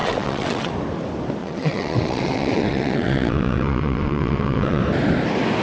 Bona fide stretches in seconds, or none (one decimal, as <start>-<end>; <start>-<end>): 0.7-1.4; 4.8-5.6